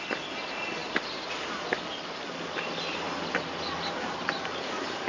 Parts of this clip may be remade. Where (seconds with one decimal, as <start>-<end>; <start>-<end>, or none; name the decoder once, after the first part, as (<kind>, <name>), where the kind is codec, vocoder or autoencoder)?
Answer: none